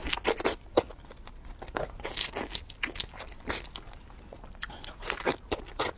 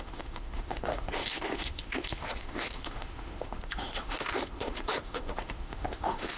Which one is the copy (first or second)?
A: second